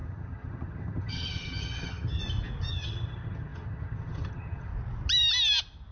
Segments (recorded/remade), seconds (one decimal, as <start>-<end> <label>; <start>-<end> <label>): 0.0-2.2 remade; 2.2-2.7 recorded; 2.7-4.7 remade; 4.7-5.9 recorded